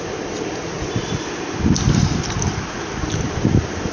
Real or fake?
real